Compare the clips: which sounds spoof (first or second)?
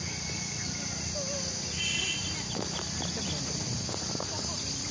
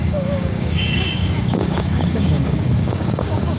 second